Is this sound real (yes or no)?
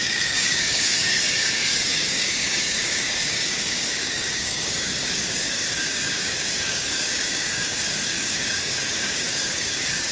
no